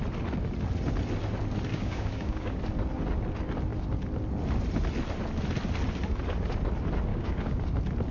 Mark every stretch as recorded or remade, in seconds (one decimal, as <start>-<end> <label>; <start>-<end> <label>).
0.0-1.7 recorded; 1.7-2.6 remade; 2.6-7.1 recorded; 7.1-7.6 remade; 7.6-8.1 recorded